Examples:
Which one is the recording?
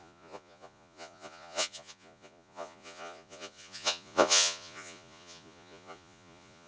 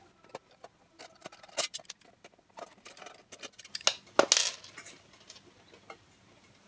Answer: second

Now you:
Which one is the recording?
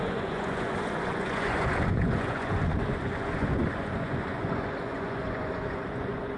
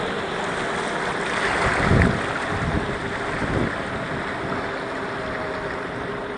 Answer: second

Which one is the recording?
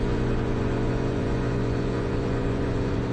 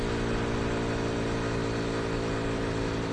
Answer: second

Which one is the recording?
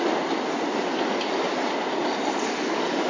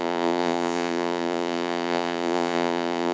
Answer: first